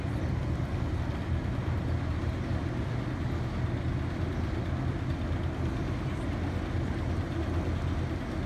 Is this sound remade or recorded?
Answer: recorded